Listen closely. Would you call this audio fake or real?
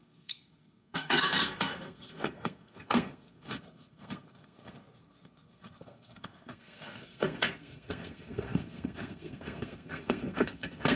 fake